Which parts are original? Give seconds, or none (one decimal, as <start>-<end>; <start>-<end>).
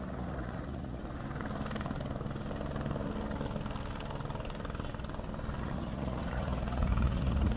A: 1.0-5.6